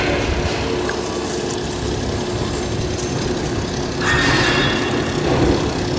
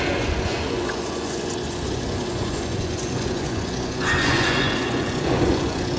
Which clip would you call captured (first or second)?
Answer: first